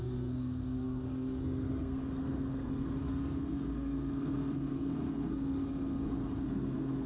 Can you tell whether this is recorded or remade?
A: remade